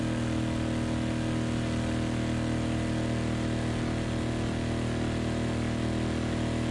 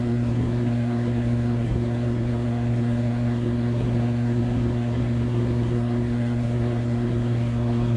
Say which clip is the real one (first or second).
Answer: first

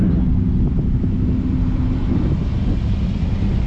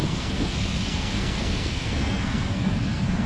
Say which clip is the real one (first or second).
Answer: first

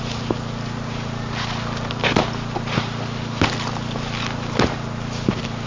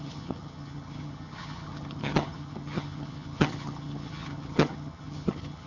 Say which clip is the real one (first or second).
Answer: first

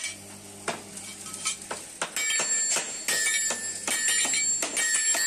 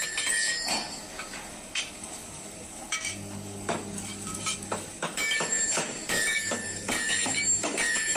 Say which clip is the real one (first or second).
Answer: first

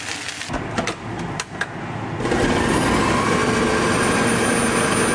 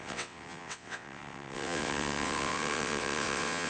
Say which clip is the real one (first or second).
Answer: first